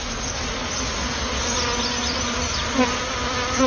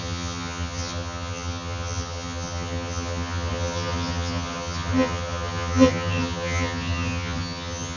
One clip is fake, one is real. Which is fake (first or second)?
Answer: second